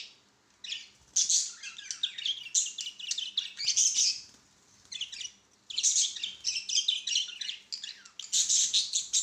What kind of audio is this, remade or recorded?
recorded